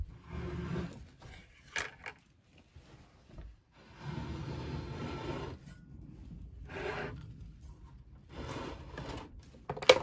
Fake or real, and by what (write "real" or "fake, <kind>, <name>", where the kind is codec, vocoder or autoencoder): real